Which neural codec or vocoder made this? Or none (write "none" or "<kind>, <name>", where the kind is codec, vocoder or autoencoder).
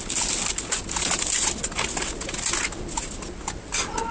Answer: none